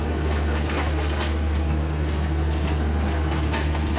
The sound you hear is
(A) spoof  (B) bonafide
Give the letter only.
A